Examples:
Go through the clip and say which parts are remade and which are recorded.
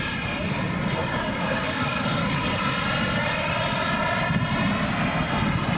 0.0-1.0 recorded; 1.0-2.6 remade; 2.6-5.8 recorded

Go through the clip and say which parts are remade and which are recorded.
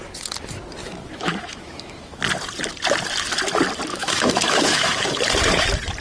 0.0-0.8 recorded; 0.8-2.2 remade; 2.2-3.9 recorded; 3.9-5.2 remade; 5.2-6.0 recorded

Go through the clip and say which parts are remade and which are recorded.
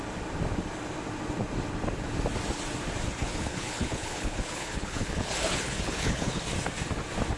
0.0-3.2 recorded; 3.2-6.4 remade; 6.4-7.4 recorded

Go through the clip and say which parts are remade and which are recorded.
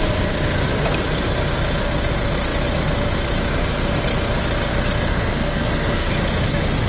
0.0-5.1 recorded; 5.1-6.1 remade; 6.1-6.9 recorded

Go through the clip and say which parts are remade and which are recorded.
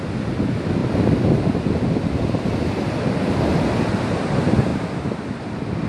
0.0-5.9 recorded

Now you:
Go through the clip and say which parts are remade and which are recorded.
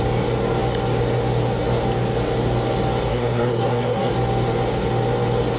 0.0-3.1 recorded; 3.1-4.1 remade; 4.1-5.6 recorded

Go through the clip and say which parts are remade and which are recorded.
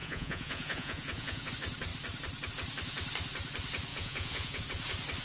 0.0-1.5 remade; 1.5-3.9 recorded; 3.9-4.6 remade; 4.6-5.2 recorded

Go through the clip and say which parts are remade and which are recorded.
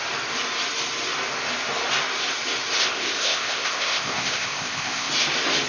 0.0-2.8 recorded; 2.8-5.1 remade; 5.1-5.7 recorded